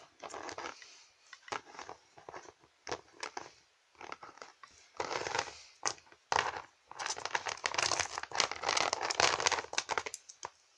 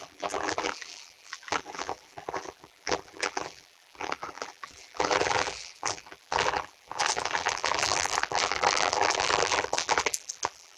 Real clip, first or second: first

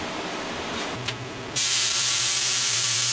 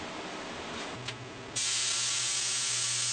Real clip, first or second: second